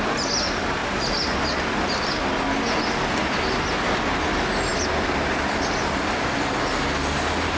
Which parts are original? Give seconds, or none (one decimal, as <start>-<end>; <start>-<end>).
0.0-7.6